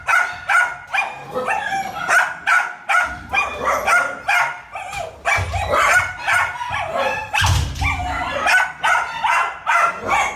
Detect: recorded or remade recorded